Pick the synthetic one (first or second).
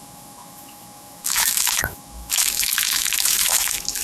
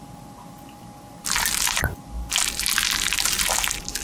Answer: first